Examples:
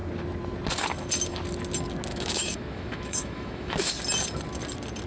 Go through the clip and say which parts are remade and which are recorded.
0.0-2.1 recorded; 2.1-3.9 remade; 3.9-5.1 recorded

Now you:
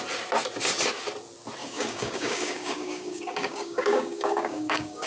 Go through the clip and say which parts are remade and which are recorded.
0.0-1.6 recorded; 1.6-5.1 remade